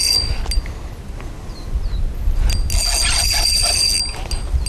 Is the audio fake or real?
real